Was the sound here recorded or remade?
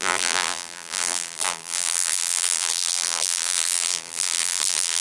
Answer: remade